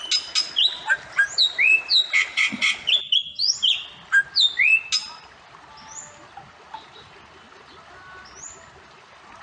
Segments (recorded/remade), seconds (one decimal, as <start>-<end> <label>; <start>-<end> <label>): 0.0-2.3 recorded; 2.3-2.9 remade; 2.9-9.4 recorded